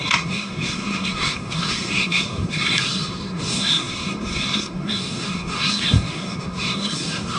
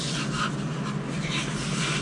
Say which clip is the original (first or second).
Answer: second